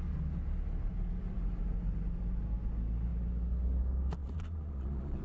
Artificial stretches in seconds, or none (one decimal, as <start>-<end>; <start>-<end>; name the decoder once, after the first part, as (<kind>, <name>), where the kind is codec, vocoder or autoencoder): 4.2-5.2 (vocoder, Vocos)